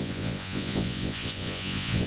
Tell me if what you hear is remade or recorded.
remade